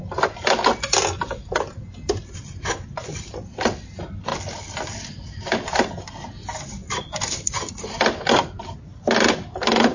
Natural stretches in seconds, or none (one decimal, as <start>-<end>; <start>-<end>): 0.0-9.9